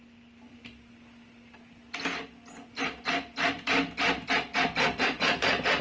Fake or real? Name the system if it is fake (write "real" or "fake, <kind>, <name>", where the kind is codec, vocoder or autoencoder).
real